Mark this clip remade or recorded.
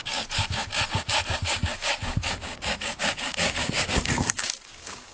remade